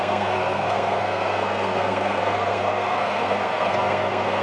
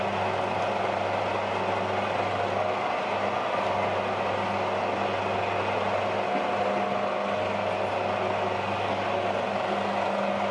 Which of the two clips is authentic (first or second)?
second